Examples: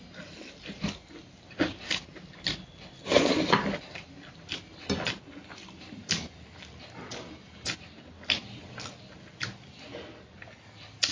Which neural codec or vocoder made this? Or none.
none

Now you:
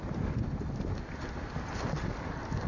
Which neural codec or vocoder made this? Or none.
none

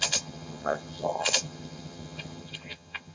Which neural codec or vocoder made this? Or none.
vocoder, HiFi-GAN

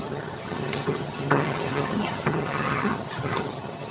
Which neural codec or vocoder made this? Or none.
vocoder, HiFi-GAN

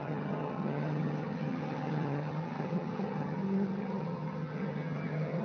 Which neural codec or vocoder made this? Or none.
vocoder, HiFi-GAN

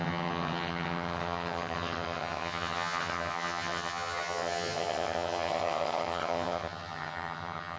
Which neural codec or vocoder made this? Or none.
vocoder, HiFi-GAN